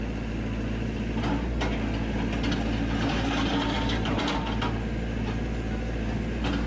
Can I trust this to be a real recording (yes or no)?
yes